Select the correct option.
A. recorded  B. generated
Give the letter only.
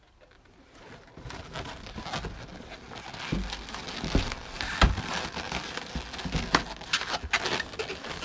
A